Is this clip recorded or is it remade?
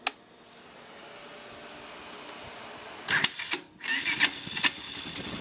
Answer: recorded